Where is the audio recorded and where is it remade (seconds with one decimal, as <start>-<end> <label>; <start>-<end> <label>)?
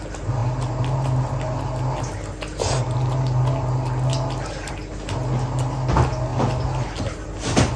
0.0-7.8 recorded